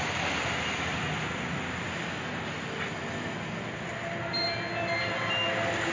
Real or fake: real